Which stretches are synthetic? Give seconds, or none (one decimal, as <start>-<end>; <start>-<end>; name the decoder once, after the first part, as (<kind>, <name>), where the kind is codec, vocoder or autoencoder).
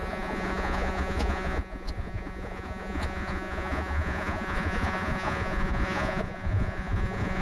0.0-7.4 (vocoder, Vocos)